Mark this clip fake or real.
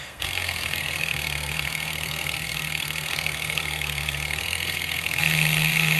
fake